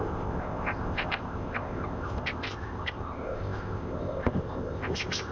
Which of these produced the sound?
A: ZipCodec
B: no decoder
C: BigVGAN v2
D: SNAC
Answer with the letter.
A